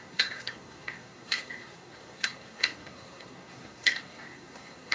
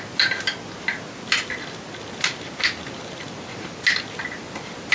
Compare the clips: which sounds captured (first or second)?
second